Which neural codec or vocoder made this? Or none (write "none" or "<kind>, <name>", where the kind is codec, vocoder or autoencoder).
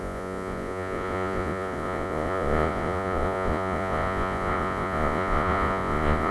vocoder, Vocos